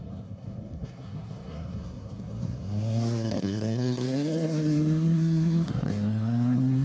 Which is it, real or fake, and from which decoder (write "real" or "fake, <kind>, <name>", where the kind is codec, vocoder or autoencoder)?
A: fake, codec, SNAC